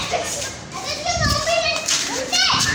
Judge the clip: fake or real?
fake